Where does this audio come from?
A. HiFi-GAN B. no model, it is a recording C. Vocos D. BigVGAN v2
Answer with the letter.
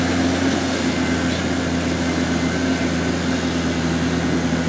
B